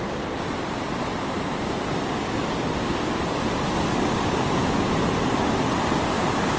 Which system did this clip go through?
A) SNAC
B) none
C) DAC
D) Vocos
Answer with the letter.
B